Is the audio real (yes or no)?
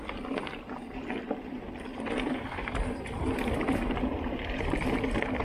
no